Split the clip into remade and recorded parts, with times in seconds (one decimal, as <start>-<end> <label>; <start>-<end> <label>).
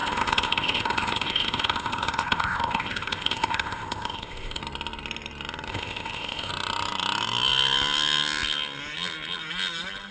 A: 0.0-4.6 remade; 4.6-5.7 recorded; 5.7-6.5 remade; 6.5-10.1 recorded